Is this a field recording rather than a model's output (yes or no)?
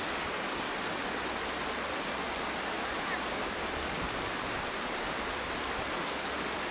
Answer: yes